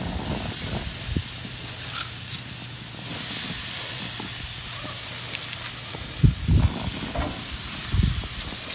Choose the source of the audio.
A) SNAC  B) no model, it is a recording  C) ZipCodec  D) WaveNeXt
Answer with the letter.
B